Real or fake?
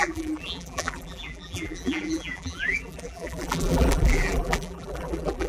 fake